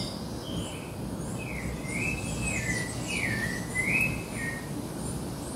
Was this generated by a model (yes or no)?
no